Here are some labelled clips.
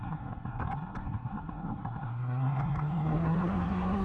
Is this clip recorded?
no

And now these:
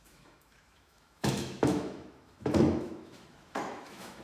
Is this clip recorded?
no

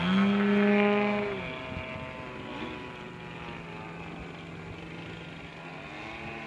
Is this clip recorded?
yes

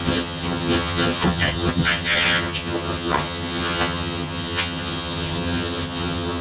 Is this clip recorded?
no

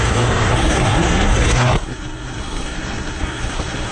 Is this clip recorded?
no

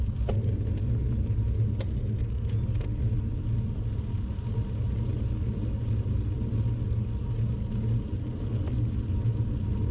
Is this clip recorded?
yes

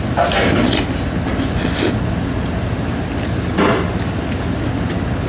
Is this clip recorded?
yes